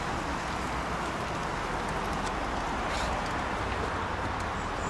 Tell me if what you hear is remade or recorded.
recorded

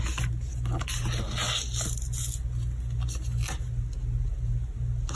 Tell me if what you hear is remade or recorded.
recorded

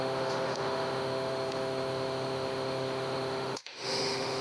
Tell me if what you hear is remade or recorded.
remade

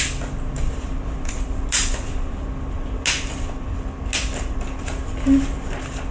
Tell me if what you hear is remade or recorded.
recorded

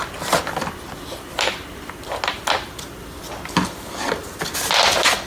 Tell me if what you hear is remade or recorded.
recorded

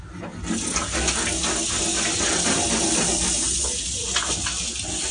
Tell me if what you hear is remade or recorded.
recorded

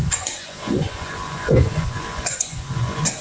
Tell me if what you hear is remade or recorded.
remade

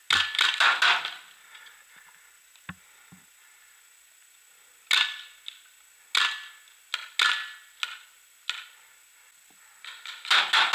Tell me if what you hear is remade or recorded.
recorded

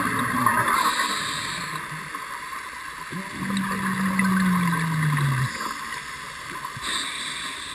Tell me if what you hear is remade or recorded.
recorded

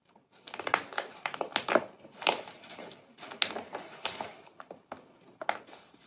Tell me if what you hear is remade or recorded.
recorded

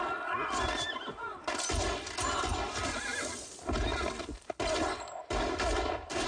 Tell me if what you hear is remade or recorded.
recorded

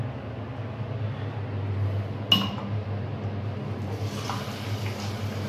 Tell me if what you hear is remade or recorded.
recorded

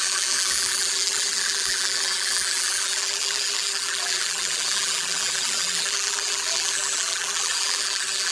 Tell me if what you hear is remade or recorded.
remade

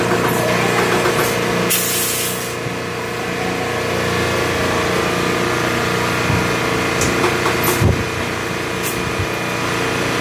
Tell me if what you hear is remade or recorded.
recorded